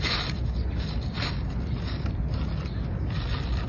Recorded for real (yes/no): yes